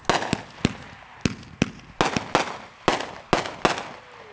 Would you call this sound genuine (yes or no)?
yes